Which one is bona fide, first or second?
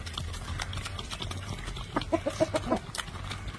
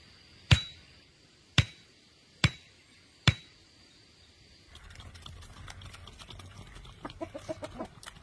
first